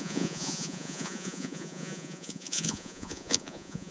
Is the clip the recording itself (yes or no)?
no